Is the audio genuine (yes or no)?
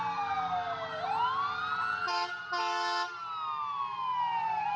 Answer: yes